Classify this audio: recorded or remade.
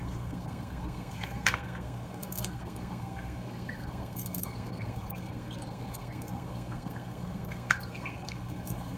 remade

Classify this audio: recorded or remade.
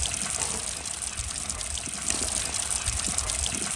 recorded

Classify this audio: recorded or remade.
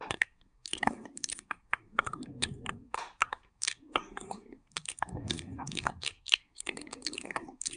remade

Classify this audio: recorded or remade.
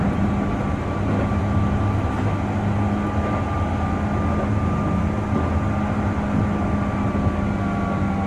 recorded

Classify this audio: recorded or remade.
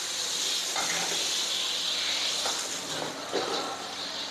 recorded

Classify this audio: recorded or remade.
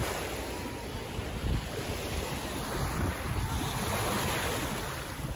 recorded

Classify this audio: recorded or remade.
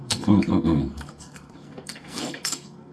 remade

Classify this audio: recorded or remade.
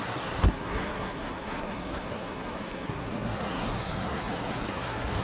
remade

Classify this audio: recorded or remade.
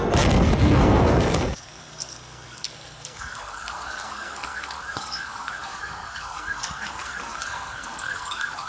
remade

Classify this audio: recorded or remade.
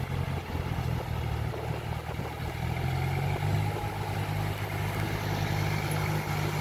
recorded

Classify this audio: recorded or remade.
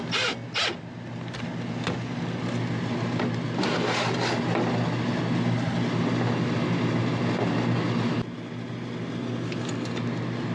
recorded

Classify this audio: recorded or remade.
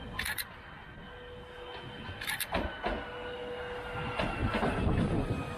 recorded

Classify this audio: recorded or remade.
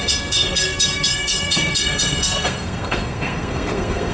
remade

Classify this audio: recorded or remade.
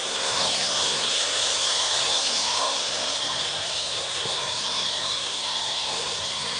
remade